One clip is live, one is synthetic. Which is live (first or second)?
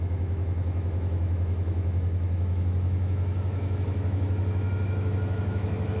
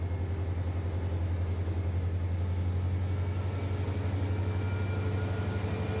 second